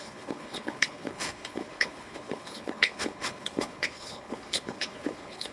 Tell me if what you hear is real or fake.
fake